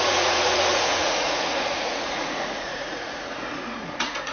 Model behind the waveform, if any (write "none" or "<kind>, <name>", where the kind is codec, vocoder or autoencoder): vocoder, Vocos